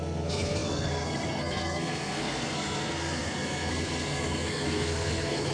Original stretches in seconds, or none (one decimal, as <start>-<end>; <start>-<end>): none